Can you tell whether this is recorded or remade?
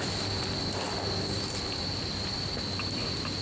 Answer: recorded